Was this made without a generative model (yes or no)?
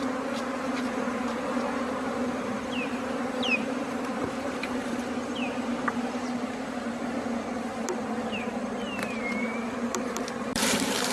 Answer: no